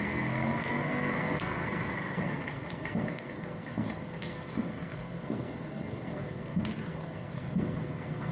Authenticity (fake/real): fake